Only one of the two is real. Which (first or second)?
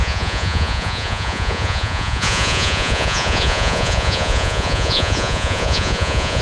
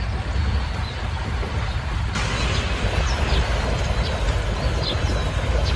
second